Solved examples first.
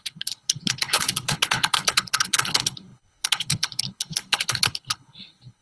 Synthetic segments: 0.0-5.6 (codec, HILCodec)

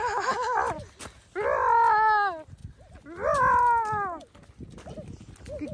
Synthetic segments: none

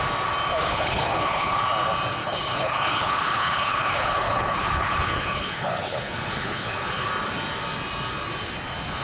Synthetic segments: 0.6-1.6 (codec, HILCodec); 2.2-7.1

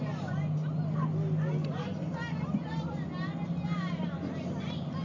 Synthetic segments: none

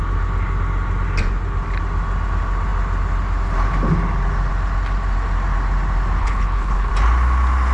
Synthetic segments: 6.2-6.9 (codec, HILCodec)

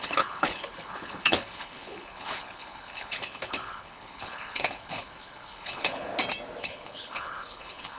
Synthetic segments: 0.0-6.1 (codec, HILCodec); 6.6-8.0